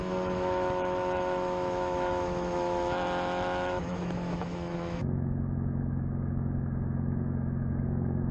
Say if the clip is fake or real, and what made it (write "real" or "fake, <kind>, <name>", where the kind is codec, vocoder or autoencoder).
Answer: fake, autoencoder, DAC-VAE